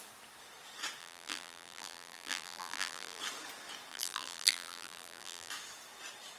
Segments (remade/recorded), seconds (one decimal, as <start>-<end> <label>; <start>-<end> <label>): 0.0-1.0 recorded; 1.0-3.2 remade; 3.2-3.9 recorded; 3.9-5.5 remade; 5.5-6.4 recorded